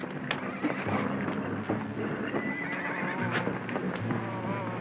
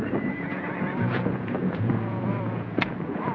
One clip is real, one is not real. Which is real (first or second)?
first